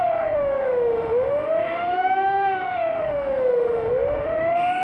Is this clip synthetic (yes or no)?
yes